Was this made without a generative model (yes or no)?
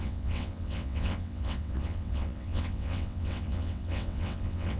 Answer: no